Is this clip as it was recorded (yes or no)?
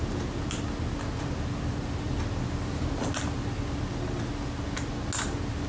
yes